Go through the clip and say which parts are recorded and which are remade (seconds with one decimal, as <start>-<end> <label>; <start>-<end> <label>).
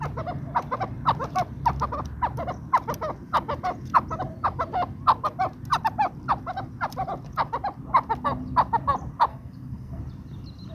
0.0-9.3 recorded; 9.3-10.0 remade; 10.0-10.7 recorded